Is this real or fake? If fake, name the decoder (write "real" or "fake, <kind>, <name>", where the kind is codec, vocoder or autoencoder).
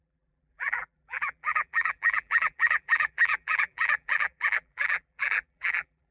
fake, vocoder, BigVGAN v2